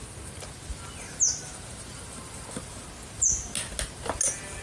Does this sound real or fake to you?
real